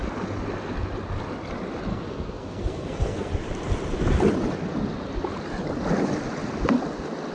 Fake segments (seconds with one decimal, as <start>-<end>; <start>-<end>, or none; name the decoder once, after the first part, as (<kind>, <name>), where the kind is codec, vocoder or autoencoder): 1.9-3.3 (codec, SNAC)

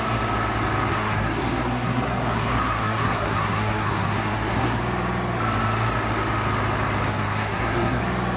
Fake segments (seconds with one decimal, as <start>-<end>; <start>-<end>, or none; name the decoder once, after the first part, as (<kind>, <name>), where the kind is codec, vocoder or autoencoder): 0.9-4.8 (codec, SNAC); 7.1-8.0